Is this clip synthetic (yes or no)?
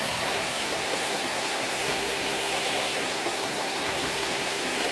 yes